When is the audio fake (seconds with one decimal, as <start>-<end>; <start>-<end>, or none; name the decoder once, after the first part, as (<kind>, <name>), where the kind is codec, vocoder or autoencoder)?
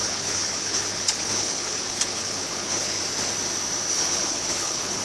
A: 0.0-3.0 (codec, HILCodec); 3.9-5.0